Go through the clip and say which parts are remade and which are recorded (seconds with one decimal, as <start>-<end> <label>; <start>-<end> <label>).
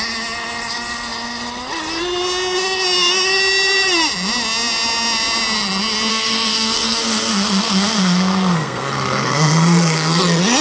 0.0-6.1 recorded; 6.1-10.2 remade; 10.2-10.6 recorded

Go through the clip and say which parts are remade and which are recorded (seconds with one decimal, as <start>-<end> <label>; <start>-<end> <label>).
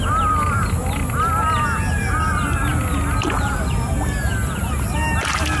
0.0-5.6 recorded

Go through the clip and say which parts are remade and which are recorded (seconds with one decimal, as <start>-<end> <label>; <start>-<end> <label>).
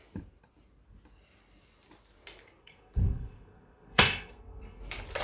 0.0-2.6 recorded; 2.6-4.8 remade; 4.8-5.2 recorded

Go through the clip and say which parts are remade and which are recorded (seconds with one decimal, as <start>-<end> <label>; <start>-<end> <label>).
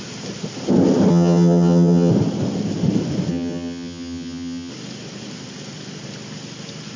0.0-1.1 recorded; 1.1-2.1 remade; 2.1-3.3 recorded; 3.3-4.7 remade; 4.7-7.0 recorded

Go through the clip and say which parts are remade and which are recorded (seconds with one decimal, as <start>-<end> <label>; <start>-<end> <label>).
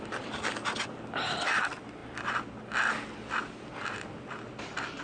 0.0-5.0 recorded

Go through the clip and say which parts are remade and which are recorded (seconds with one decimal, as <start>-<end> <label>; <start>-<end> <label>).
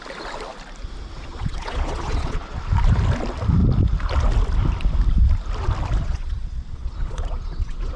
0.0-1.3 recorded; 1.3-2.6 remade; 2.6-6.0 recorded; 6.0-8.0 remade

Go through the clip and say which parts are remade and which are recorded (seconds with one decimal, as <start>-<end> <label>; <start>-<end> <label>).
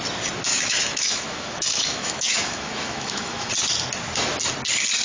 0.0-0.5 recorded; 0.5-3.5 remade; 3.5-5.0 recorded